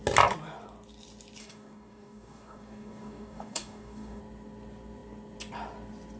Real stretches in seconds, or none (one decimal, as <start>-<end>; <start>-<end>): 0.0-1.4; 4.2-6.2